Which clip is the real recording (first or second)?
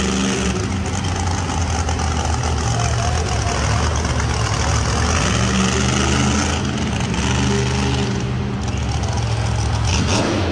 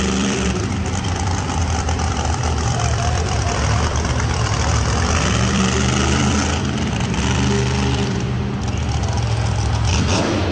first